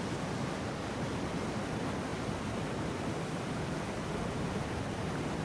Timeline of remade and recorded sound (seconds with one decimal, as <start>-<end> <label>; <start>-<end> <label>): 0.0-5.4 recorded